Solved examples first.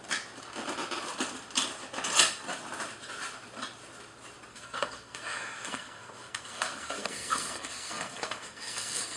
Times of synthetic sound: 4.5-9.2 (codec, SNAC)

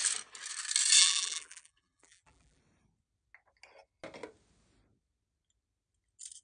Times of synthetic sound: 1.0-2.6 (vocoder, BigVGAN v2)

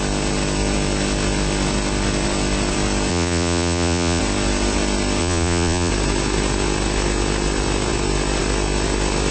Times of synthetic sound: 3.1-4.2 (vocoder, Vocos); 5.2-5.9

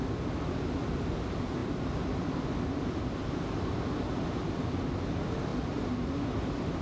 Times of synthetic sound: none

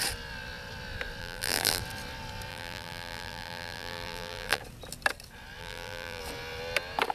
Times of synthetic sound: 1.2-1.8 (vocoder, BigVGAN v2); 2.5-4.6; 5.6-6.2